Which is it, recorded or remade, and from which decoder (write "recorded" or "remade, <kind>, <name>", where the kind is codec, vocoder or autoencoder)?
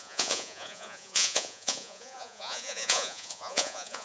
remade, vocoder, Vocos